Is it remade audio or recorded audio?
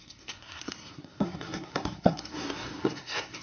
remade